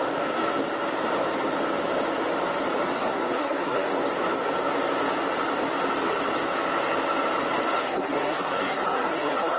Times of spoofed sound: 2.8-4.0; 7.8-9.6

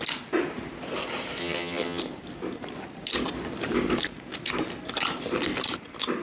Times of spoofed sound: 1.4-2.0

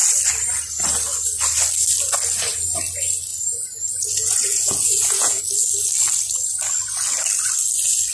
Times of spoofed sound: 3.3-5.4

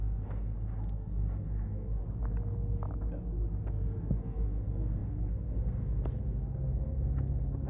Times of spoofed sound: 0.0-2.0; 4.0-7.7

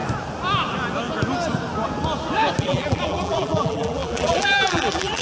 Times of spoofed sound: 2.6-5.2